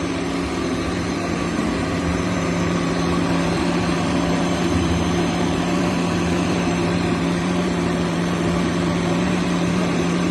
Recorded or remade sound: remade